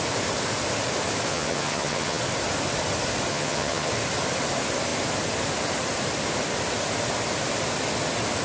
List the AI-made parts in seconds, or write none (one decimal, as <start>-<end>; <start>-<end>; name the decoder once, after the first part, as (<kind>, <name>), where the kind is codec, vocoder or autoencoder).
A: 1.3-2.2 (vocoder, HiFi-GAN); 3.3-3.9